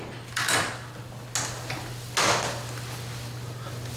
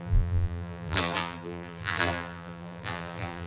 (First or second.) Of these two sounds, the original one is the first